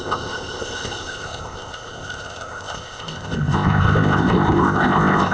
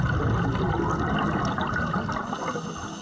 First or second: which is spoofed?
first